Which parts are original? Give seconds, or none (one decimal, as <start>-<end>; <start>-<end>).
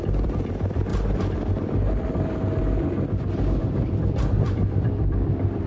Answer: 0.9-3.6